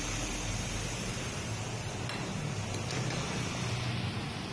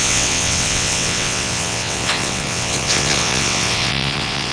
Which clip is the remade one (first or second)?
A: second